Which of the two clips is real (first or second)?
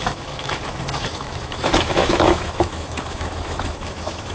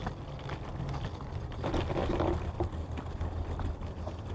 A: second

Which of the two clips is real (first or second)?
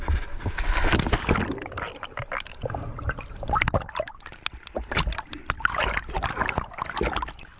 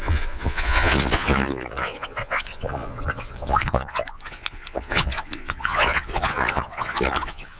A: first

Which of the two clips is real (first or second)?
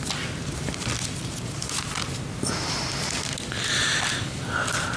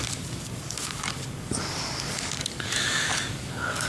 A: first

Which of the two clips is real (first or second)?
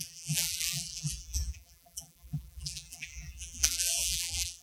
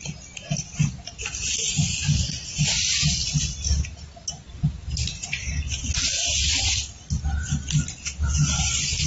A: second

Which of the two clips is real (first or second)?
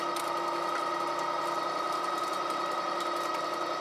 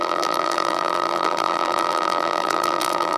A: first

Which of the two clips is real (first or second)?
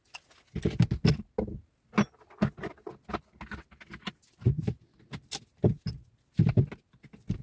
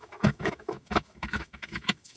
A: first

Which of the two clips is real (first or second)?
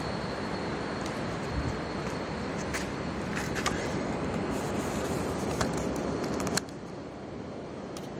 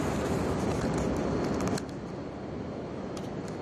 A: second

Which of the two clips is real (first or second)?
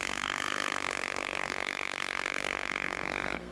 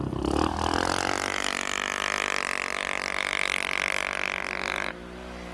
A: second